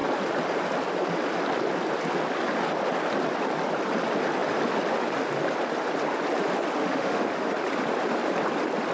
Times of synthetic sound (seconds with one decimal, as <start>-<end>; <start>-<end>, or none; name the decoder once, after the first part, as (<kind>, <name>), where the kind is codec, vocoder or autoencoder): 6.8-7.5 (autoencoder, DAC-VAE)